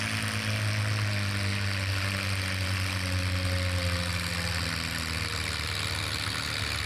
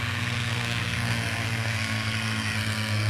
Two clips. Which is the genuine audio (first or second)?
first